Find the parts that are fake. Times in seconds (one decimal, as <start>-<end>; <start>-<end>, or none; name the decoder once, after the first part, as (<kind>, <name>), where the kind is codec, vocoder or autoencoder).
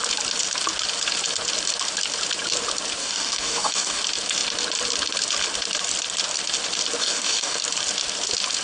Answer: 3.0-4.0 (codec, DAC); 7.0-7.6